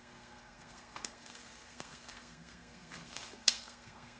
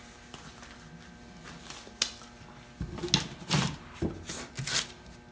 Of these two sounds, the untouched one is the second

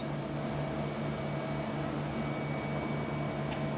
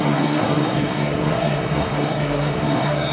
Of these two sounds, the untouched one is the first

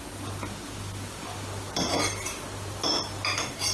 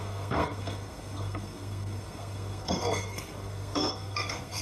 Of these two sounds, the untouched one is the first